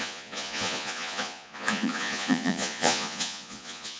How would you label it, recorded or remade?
remade